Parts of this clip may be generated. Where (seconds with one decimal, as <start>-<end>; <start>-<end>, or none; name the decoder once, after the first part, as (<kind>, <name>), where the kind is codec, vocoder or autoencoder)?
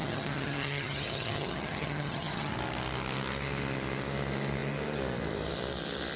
0.0-2.5 (vocoder, HiFi-GAN)